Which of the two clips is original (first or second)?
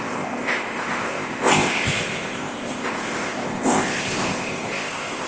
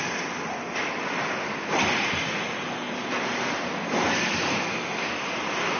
second